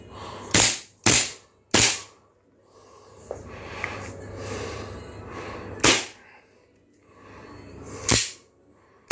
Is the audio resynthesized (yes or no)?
no